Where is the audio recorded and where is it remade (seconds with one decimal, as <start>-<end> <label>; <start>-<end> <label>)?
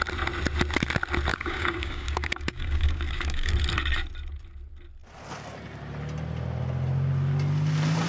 0.0-1.3 recorded; 1.3-3.5 remade; 3.5-8.1 recorded